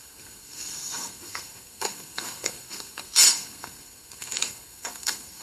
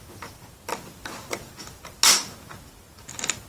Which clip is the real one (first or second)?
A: second